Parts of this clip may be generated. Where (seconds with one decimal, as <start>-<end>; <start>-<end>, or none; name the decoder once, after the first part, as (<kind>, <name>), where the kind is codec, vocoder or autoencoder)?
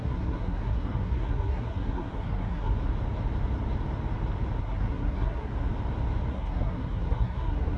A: 0.0-2.7 (codec, SNAC); 4.6-5.5; 6.3-7.8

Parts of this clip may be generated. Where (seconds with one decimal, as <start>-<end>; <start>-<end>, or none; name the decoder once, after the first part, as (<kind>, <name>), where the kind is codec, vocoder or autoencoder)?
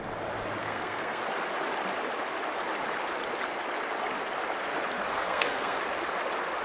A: 0.6-1.2 (codec, SNAC); 5.1-5.8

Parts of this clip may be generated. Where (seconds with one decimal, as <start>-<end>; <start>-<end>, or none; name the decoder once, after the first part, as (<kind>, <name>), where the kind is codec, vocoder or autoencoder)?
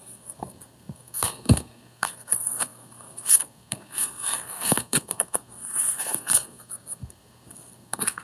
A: 0.0-8.2 (codec, SNAC)